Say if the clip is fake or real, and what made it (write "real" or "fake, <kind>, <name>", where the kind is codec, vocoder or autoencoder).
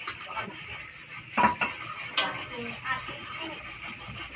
real